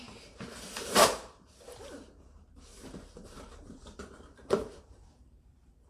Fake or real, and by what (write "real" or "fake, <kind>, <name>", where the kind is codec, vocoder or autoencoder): fake, vocoder, BigVGAN v2